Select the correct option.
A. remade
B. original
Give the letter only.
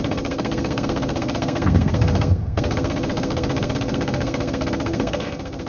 A